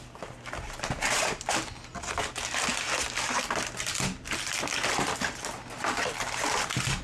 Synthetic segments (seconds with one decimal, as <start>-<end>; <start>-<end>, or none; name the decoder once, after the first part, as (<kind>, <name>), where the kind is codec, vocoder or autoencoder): none